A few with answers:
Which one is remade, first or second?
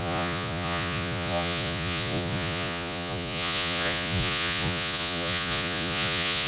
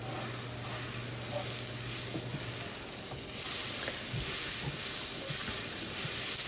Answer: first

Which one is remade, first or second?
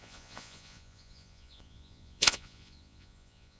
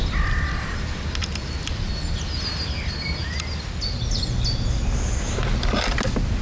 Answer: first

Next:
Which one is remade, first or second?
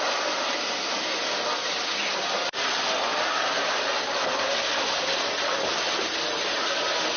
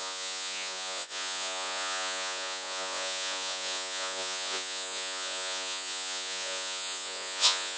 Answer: second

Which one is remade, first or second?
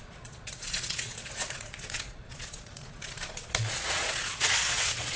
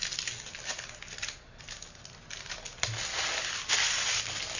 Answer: first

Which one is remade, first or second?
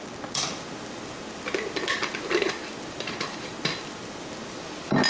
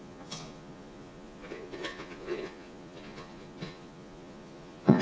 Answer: second